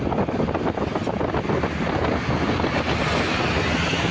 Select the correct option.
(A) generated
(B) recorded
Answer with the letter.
B